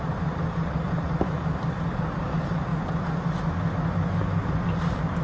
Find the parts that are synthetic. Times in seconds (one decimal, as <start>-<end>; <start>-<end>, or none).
0.0-2.7; 4.8-5.2